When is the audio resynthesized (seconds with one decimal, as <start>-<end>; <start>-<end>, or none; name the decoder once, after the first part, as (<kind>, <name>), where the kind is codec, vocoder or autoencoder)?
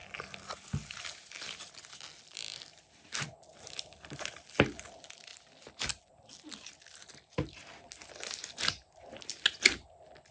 none